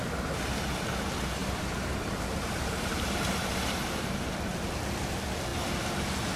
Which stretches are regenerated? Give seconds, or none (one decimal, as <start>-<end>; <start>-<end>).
1.4-4.1